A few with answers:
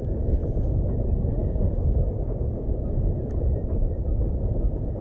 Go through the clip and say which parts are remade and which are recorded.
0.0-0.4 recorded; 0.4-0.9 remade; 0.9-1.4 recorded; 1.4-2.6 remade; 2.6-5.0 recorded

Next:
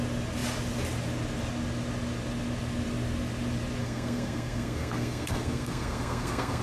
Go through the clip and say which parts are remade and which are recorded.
0.0-3.8 recorded; 3.8-6.6 remade